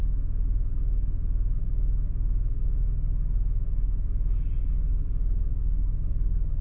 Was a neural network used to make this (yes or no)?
no